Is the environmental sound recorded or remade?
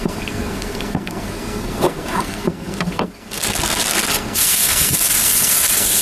remade